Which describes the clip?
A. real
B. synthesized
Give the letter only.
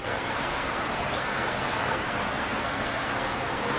B